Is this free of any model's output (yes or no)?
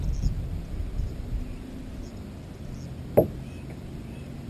yes